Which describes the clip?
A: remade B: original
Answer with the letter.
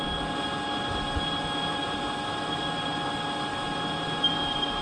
B